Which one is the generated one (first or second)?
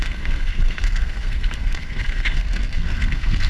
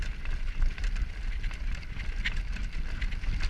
first